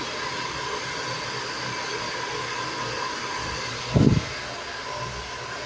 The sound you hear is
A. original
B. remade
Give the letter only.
A